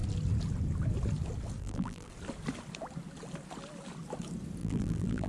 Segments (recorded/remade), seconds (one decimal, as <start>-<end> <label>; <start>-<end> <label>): 0.0-1.6 recorded; 1.6-2.1 remade; 2.1-4.6 recorded; 4.6-5.3 remade